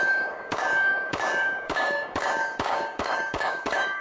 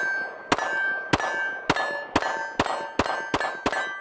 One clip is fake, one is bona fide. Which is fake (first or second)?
first